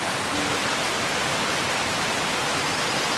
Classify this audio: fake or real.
real